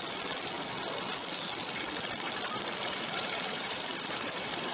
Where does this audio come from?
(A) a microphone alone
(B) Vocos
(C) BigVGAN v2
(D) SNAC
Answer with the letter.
B